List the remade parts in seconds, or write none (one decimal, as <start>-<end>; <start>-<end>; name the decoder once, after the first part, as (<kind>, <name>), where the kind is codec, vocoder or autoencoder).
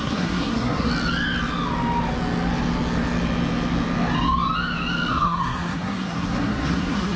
0.0-0.9 (codec, SNAC); 5.1-7.2